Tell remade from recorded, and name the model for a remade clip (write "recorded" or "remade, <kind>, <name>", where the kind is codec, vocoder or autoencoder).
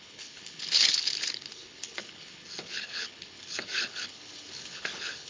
remade, codec, HILCodec